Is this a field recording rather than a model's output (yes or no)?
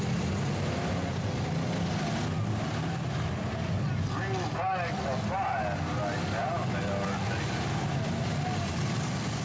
yes